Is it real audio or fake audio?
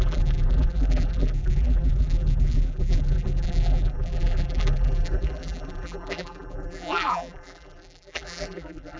fake